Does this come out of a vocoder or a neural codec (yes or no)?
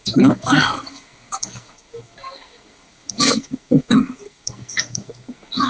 yes